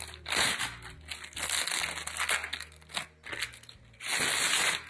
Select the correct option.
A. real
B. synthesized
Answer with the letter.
A